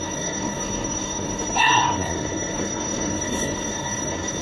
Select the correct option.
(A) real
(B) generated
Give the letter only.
B